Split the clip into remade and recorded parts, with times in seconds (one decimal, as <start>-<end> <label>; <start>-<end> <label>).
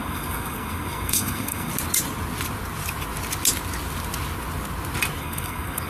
0.0-1.7 remade; 1.7-5.2 recorded; 5.2-5.9 remade